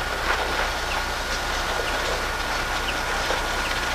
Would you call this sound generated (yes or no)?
no